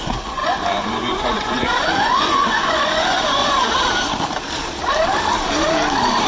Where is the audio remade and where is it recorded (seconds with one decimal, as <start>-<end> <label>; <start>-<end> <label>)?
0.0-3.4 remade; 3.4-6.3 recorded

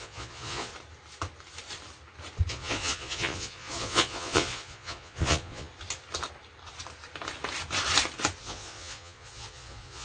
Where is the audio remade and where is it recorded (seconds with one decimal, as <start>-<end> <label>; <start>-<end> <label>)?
0.0-0.7 remade; 0.7-2.5 recorded; 2.5-5.7 remade; 5.7-8.4 recorded; 8.4-10.0 remade

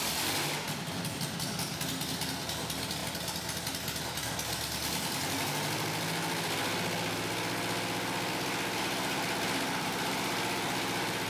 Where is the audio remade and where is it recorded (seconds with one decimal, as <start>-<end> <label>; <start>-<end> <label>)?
0.0-11.3 recorded

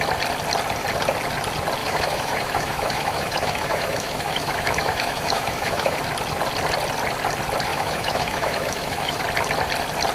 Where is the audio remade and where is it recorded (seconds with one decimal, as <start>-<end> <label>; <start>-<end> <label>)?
0.0-1.8 recorded; 1.8-6.0 remade; 6.0-7.7 recorded; 7.7-9.2 remade; 9.2-10.1 recorded

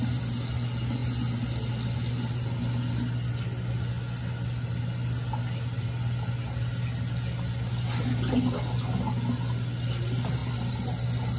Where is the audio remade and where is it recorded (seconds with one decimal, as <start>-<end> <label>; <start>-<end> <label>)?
0.0-11.4 recorded

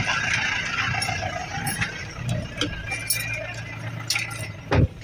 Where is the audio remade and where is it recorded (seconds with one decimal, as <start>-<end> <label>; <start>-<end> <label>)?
0.0-1.4 recorded; 1.4-2.2 remade; 2.2-5.0 recorded

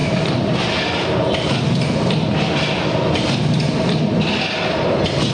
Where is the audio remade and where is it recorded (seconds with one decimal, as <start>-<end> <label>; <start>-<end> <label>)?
0.0-5.3 recorded